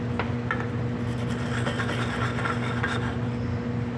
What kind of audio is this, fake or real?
real